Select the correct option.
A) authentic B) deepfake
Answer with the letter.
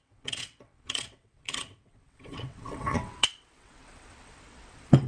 B